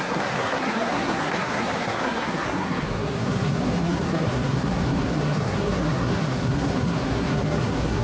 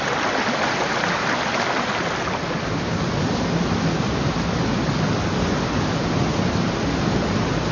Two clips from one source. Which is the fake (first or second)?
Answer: first